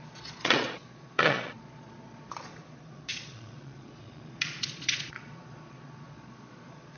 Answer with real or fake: fake